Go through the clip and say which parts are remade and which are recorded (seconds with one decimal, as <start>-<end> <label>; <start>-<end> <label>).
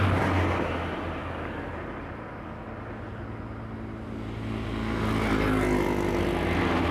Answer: 0.0-1.2 recorded; 1.2-1.7 remade; 1.7-6.9 recorded